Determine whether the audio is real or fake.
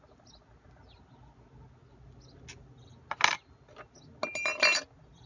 real